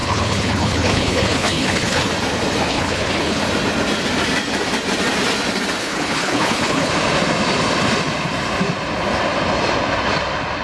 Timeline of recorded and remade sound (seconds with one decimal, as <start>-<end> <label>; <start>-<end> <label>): 0.0-2.1 remade; 2.1-2.7 recorded; 2.7-3.4 remade; 3.4-5.8 recorded; 5.8-6.9 remade; 6.9-10.6 recorded